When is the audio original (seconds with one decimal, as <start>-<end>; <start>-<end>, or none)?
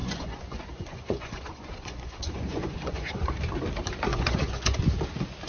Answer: 3.3-4.1; 4.8-5.5